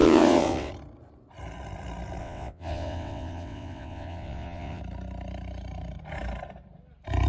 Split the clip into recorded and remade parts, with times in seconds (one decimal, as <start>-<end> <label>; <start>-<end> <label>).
0.0-0.7 remade; 0.7-2.2 recorded; 2.2-4.8 remade; 4.8-7.3 recorded